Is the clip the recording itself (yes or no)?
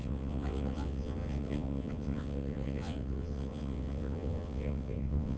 no